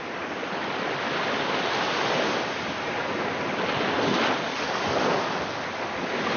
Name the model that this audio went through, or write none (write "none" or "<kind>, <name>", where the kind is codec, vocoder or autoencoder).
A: none